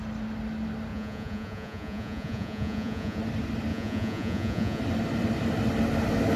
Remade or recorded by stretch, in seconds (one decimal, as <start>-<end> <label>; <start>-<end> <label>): 0.0-0.9 recorded; 0.9-3.2 remade; 3.2-3.7 recorded; 3.7-4.8 remade; 4.8-6.4 recorded